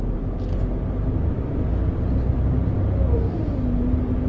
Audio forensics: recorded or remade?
recorded